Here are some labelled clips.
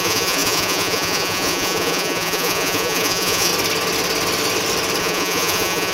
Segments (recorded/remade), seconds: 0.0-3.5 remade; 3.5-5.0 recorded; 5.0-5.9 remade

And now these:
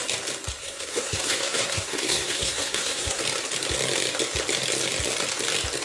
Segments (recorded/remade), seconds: 0.0-0.6 recorded; 0.6-3.2 remade; 3.2-5.8 recorded

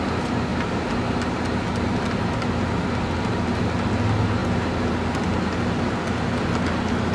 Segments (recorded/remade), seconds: 0.0-7.1 recorded

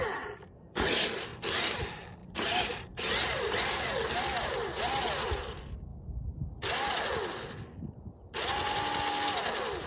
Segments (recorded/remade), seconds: 0.0-1.3 recorded; 1.3-1.8 remade; 1.8-2.2 recorded; 2.2-4.8 remade; 4.8-9.9 recorded

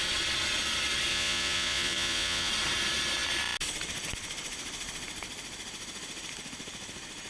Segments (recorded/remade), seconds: 0.0-1.1 recorded; 1.1-2.5 remade; 2.5-7.3 recorded

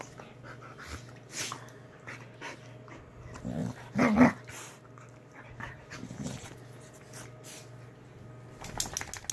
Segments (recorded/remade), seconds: 0.0-9.3 recorded